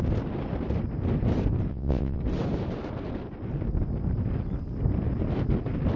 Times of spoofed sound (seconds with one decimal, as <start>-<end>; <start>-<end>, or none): 1.7-2.2